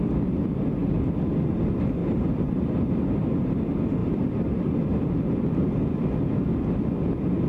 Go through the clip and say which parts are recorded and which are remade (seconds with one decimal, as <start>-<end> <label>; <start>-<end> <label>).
0.0-2.0 recorded; 2.0-3.6 remade; 3.6-4.0 recorded; 4.0-4.9 remade; 4.9-7.5 recorded

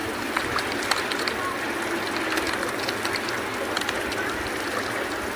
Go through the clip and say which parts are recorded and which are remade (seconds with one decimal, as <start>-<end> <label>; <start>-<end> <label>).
0.0-2.1 remade; 2.1-5.4 recorded

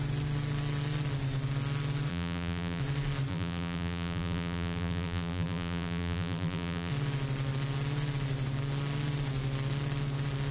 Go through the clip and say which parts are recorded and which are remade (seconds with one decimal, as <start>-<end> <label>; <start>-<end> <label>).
0.0-2.1 recorded; 2.1-2.8 remade; 2.8-3.3 recorded; 3.3-6.9 remade; 6.9-10.5 recorded

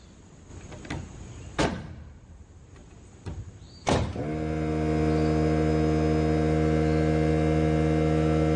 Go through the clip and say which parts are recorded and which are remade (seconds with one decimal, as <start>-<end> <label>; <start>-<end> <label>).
0.0-0.5 recorded; 0.5-1.6 remade; 1.6-2.8 recorded; 2.8-4.2 remade; 4.2-8.6 recorded

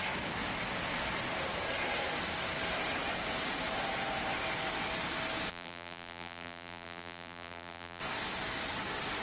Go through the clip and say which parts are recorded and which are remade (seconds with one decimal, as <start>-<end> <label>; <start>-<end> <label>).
0.0-5.5 recorded; 5.5-8.0 remade; 8.0-9.2 recorded

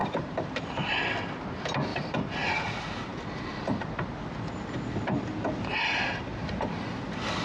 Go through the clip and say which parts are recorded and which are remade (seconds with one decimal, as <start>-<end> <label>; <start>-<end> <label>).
0.0-1.0 remade; 1.0-1.9 recorded; 1.9-2.5 remade; 2.5-6.3 recorded; 6.3-6.8 remade; 6.8-7.4 recorded